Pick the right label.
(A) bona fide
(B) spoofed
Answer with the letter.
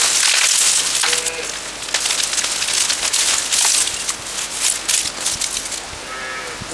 A